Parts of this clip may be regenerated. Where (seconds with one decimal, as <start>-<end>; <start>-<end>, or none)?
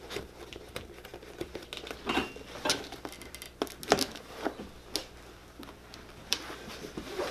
5.4-7.3